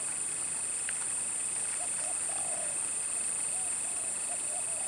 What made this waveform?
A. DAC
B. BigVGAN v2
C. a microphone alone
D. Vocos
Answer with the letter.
C